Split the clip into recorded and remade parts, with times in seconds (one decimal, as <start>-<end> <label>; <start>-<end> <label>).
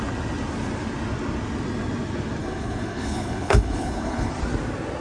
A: 0.0-2.4 recorded; 2.4-4.3 remade; 4.3-5.0 recorded